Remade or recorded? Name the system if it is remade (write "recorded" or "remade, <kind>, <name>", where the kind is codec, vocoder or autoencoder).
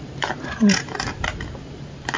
recorded